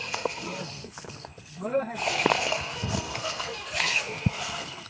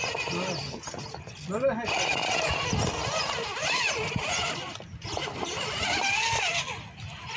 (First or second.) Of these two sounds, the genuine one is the second